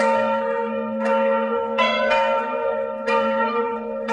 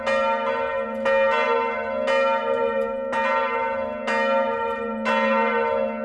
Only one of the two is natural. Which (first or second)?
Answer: second